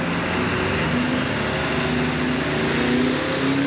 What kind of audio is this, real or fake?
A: real